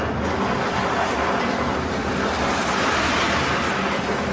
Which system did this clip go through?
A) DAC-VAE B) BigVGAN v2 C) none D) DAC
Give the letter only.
C